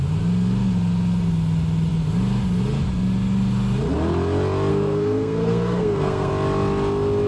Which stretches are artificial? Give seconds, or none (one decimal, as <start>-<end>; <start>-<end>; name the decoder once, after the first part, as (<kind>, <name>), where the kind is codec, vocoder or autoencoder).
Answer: 4.7-6.3 (codec, SNAC)